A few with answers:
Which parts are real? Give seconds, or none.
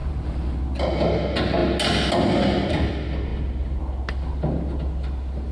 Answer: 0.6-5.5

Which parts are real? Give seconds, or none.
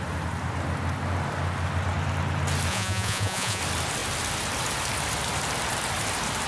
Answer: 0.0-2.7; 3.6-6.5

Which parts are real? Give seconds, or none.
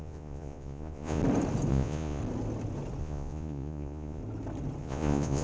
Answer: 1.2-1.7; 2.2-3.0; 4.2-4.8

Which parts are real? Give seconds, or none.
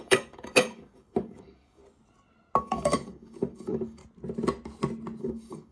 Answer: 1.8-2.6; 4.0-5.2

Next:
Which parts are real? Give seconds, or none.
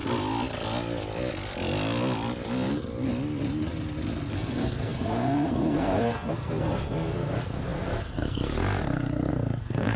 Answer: 0.0-4.3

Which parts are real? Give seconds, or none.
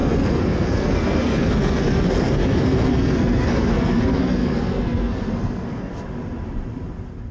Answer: 5.9-7.3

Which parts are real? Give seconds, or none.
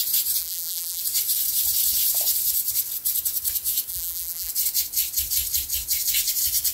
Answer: 0.0-0.4; 1.0-3.9; 4.5-6.7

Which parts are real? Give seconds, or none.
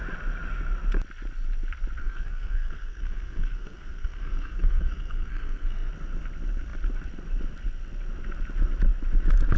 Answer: 0.0-2.0; 5.9-9.6